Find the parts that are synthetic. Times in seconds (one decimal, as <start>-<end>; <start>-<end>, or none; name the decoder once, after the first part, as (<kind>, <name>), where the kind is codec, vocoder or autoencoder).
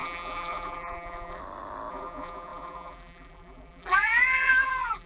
0.0-1.4 (vocoder, BigVGAN v2); 1.9-5.1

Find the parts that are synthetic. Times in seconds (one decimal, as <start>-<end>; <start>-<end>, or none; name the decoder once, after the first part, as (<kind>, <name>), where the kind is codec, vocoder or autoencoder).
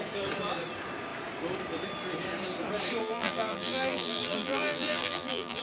3.0-5.6 (vocoder, BigVGAN v2)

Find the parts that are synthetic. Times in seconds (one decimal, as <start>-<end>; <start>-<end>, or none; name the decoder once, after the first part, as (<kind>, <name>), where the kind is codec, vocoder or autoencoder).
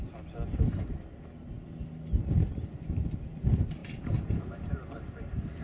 3.4-5.6 (vocoder, BigVGAN v2)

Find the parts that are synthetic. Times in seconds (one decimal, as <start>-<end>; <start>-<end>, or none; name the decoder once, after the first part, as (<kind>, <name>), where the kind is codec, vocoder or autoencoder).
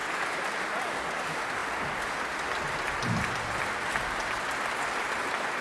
none